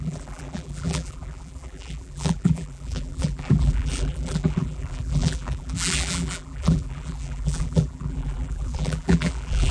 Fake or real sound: fake